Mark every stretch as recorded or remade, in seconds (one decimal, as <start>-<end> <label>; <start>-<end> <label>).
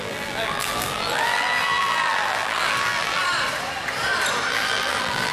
0.0-3.2 remade; 3.2-4.5 recorded; 4.5-5.3 remade